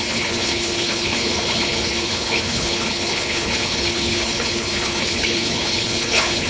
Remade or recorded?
remade